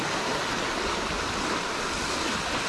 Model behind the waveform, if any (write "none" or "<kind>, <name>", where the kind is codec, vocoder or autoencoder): none